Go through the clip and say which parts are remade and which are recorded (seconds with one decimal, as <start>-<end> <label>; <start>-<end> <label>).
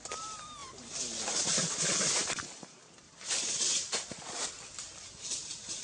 0.0-5.8 recorded